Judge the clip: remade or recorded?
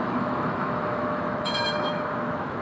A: remade